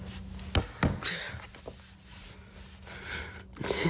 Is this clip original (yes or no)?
yes